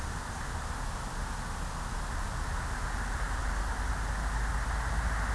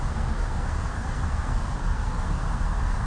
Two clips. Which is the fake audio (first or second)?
second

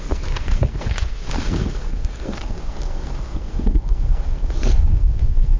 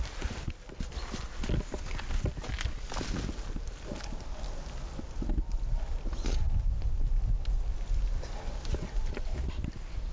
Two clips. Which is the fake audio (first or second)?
first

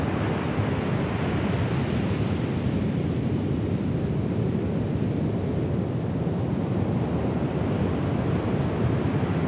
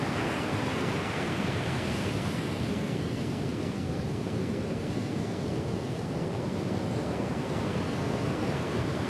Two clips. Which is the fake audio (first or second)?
second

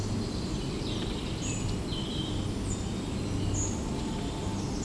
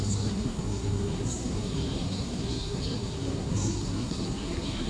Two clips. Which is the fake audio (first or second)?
second